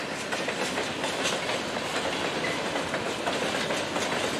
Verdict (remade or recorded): recorded